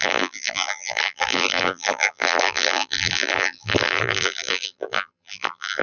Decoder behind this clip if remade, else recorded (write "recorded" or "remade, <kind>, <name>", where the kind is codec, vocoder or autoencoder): remade, vocoder, BigVGAN v2